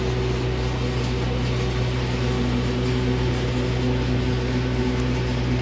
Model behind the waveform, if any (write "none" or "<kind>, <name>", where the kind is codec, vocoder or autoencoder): none